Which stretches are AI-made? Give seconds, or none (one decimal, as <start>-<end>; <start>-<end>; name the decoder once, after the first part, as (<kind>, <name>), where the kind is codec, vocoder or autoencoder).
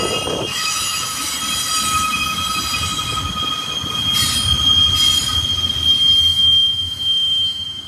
0.5-1.3 (autoencoder, DAC-VAE); 6.3-7.9